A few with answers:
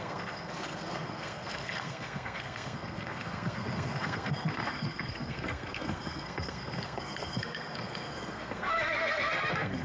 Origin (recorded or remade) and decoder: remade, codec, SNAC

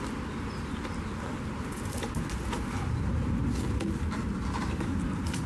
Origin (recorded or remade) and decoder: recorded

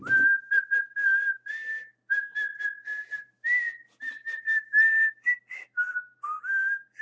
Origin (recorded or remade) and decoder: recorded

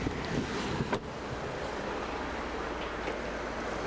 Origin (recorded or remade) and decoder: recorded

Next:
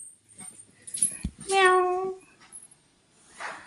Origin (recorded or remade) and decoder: recorded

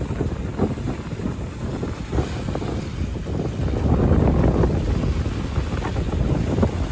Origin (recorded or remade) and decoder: recorded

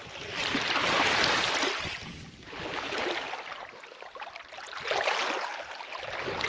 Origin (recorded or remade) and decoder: recorded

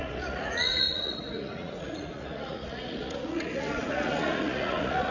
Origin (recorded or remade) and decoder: remade, vocoder, Vocos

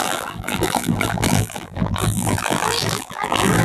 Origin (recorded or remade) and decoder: remade, vocoder, BigVGAN v2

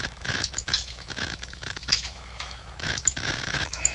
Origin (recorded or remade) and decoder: remade, autoencoder, DAC-VAE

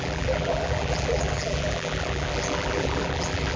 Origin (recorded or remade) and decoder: remade, vocoder, BigVGAN v2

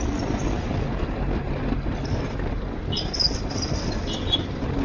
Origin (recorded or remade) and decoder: recorded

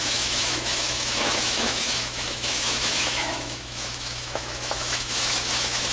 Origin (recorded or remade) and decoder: remade, autoencoder, DAC-VAE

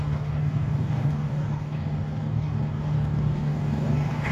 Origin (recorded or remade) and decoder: remade, codec, DAC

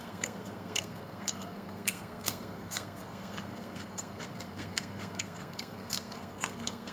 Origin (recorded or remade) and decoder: remade, codec, SNAC